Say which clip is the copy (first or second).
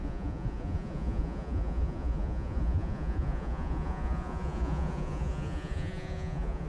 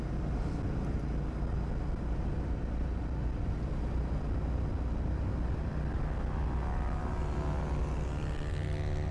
first